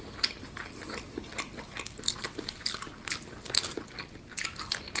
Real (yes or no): yes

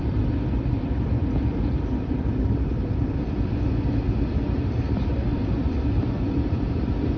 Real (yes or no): no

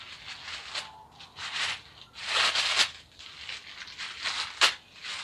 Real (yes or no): yes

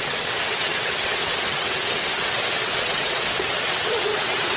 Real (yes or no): no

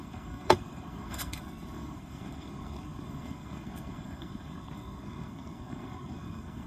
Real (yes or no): no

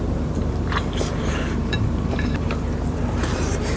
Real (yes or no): no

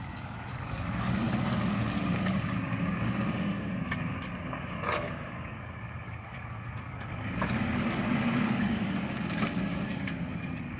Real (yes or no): no